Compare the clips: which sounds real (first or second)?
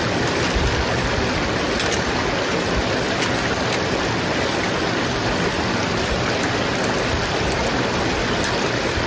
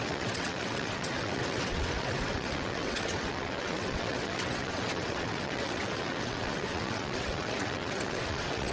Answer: first